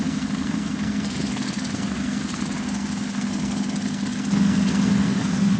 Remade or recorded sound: remade